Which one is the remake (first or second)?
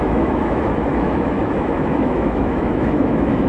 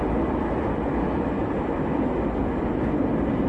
first